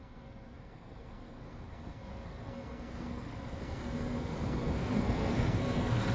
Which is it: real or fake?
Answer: fake